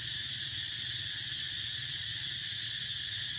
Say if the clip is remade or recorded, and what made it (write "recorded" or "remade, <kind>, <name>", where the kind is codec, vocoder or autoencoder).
recorded